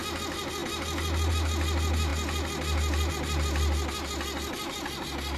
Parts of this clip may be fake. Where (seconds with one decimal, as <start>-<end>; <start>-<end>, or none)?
none